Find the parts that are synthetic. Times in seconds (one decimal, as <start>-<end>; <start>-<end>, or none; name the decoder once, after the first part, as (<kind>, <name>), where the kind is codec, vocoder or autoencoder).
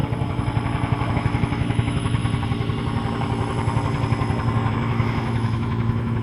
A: 1.1-2.2 (autoencoder, DAC-VAE); 4.7-6.2